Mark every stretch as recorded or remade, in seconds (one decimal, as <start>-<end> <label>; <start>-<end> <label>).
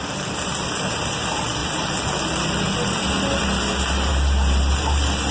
0.0-5.3 recorded